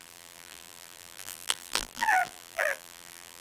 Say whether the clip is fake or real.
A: fake